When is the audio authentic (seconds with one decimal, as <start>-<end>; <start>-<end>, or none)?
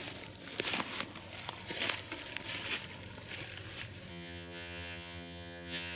0.0-4.1